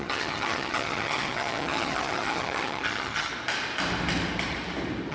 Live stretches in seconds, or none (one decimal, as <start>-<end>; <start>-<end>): 3.3-5.1